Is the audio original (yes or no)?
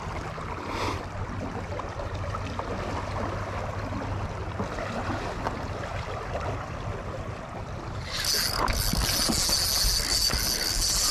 yes